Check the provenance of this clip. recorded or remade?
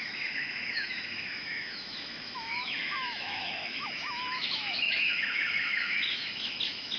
remade